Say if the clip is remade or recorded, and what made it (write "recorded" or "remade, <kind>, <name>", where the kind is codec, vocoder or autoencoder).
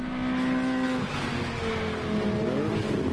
recorded